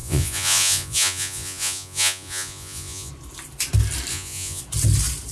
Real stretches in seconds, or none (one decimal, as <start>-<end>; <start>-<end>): 3.1-4.1; 4.6-5.3